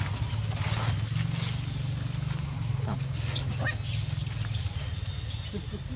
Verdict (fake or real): real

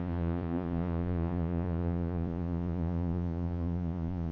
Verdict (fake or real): fake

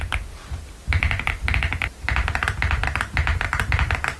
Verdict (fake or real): real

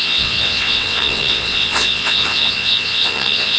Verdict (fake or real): fake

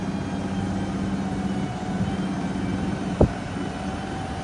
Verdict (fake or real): real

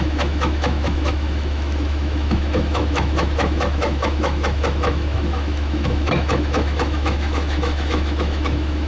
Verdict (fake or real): fake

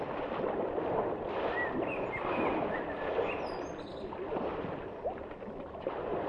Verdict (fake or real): real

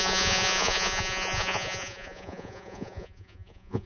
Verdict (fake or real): fake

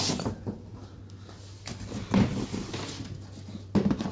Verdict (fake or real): real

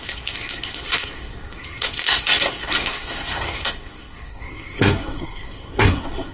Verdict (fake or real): fake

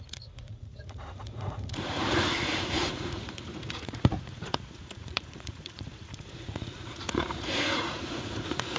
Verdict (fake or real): fake